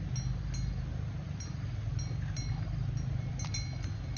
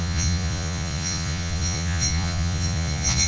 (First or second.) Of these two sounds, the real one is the first